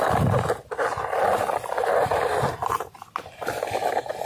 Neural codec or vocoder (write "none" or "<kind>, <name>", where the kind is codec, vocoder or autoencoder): none